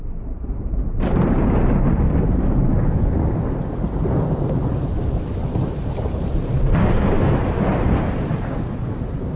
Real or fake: real